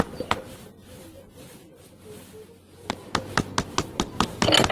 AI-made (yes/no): no